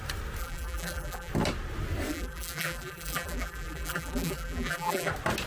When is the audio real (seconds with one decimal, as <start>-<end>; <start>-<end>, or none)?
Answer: 0.0-0.4; 1.3-2.1; 5.1-5.5